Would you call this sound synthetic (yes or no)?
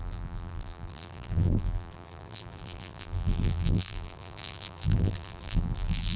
yes